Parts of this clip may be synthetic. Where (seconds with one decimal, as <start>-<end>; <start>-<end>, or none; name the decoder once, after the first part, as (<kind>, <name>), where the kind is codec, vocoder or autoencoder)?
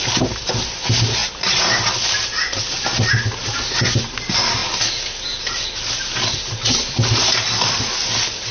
none